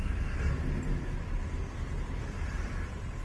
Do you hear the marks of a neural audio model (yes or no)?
no